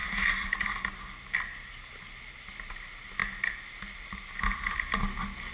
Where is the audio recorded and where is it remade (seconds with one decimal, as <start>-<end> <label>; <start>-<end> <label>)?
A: 0.0-5.5 recorded